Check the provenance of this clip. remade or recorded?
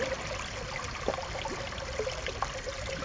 recorded